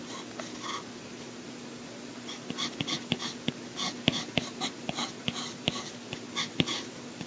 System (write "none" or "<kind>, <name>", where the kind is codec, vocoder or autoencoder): none